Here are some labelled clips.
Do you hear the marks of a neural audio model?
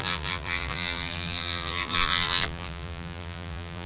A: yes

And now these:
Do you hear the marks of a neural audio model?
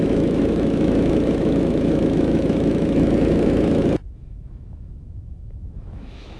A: yes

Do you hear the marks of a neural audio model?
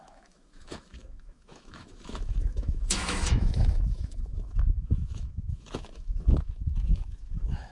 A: yes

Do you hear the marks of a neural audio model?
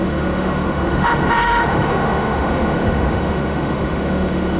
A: yes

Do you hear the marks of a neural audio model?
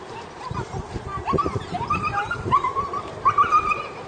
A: yes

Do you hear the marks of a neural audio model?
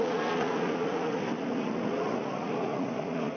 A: yes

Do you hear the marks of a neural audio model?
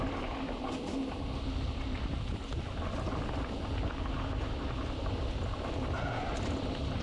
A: no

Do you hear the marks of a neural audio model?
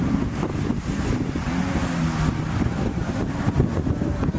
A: no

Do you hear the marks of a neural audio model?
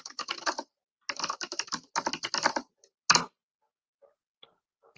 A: no